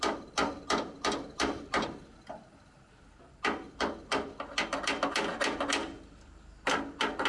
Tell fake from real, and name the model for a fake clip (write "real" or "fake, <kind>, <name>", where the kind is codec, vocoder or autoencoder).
real